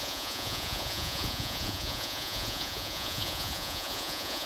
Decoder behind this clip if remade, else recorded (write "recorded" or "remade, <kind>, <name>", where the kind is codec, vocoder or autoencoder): remade, vocoder, Vocos